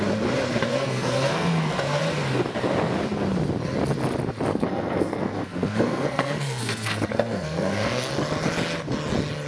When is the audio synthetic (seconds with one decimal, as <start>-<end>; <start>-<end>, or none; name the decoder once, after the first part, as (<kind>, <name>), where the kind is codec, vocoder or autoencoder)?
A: 0.7-2.0 (codec, SNAC); 4.5-8.1

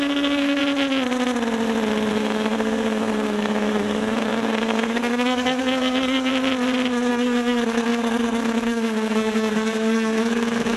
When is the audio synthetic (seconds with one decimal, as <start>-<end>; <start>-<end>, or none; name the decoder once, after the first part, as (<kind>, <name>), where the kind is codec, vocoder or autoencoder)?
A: 0.0-0.6 (codec, SNAC); 2.1-6.3; 7.1-10.8